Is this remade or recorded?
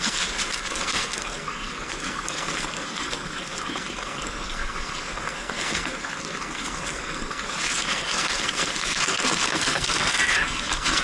remade